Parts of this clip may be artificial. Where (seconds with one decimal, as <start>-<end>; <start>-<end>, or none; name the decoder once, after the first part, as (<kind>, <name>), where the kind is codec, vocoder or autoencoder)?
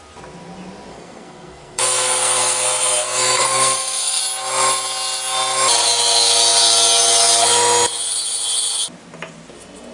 0.9-4.2 (codec, SNAC)